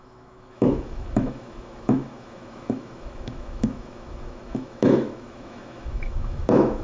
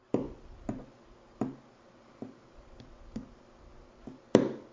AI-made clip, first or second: first